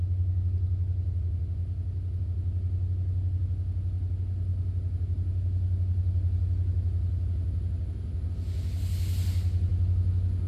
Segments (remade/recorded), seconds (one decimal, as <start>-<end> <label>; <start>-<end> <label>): 0.0-10.5 recorded